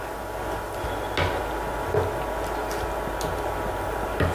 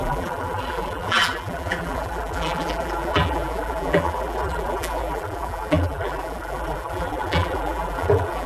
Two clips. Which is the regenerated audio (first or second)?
second